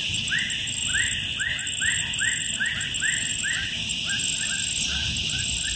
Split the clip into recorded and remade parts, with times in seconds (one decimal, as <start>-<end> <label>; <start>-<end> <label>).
0.0-0.9 remade; 0.9-1.8 recorded; 1.8-5.8 remade